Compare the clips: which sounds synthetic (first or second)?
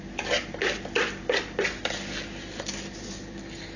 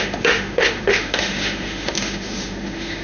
second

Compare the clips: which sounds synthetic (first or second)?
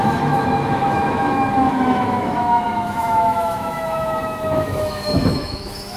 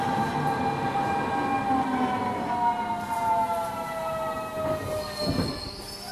first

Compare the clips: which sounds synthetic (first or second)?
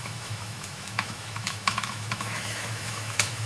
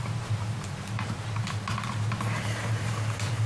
first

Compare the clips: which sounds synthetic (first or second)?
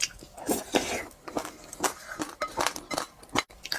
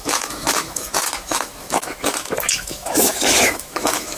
second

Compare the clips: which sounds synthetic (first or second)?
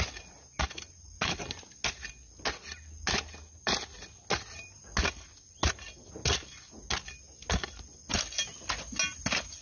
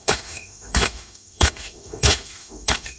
second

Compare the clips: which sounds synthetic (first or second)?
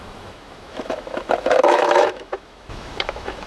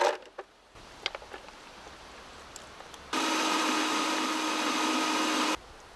first